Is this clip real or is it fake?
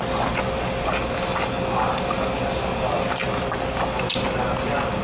real